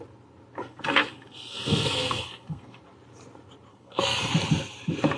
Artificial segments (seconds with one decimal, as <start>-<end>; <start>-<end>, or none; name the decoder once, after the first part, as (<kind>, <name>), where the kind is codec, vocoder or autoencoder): 0.6-2.8 (codec, SNAC); 3.7-4.3